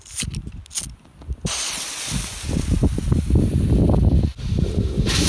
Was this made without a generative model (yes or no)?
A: yes